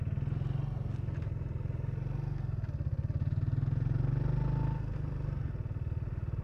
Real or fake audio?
real